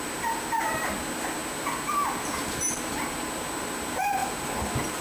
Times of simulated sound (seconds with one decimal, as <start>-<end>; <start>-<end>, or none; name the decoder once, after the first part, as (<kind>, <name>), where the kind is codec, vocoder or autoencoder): none